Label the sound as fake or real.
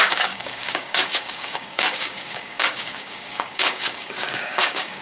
fake